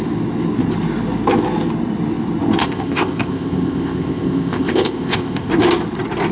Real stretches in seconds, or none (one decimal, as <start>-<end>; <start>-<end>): 0.0-2.6; 5.5-6.3